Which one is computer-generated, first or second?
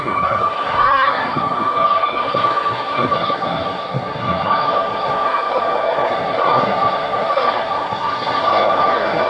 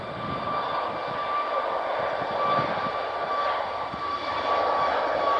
first